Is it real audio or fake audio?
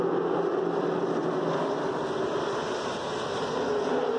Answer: real